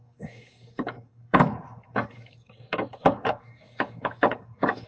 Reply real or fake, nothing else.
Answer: fake